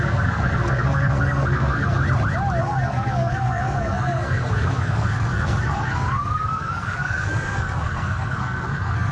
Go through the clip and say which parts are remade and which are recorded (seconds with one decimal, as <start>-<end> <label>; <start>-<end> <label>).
0.0-2.0 remade; 2.0-2.6 recorded; 2.6-9.1 remade